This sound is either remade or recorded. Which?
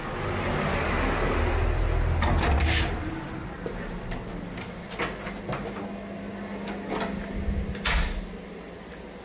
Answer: recorded